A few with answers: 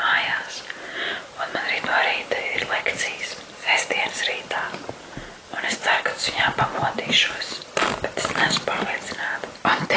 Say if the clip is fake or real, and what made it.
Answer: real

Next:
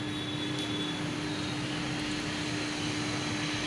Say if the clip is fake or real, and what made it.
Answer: real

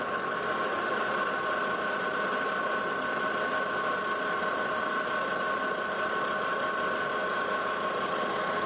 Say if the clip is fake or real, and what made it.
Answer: real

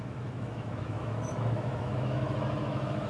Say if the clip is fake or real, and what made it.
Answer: fake, autoencoder, DAC-VAE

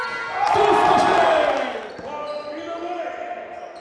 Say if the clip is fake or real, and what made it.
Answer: real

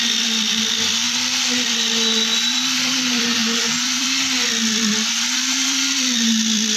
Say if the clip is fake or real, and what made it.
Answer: fake, vocoder, BigVGAN v2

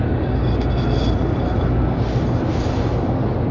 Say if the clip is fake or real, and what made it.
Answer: real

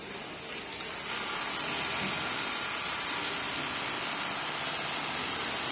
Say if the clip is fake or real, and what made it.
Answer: real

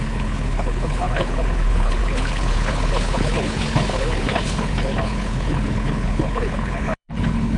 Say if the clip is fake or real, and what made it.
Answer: fake, codec, HILCodec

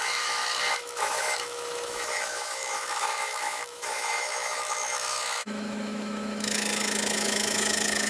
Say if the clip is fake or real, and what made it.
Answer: fake, autoencoder, DAC-VAE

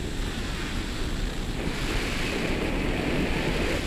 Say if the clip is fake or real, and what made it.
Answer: real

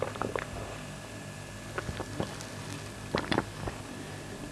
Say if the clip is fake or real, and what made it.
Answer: real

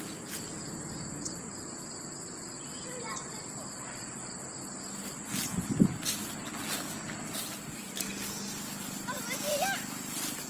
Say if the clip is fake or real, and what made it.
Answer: real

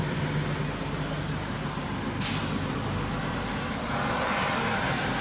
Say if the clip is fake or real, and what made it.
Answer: real